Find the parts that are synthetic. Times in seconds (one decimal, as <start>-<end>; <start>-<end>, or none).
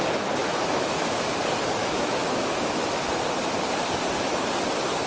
0.4-1.3; 1.8-3.1